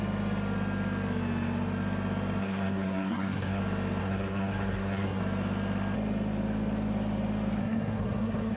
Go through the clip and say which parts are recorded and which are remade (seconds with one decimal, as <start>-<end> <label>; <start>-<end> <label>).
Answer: 0.0-2.4 recorded; 2.4-3.6 remade; 3.6-4.0 recorded; 4.0-5.2 remade; 5.2-7.6 recorded; 7.6-8.6 remade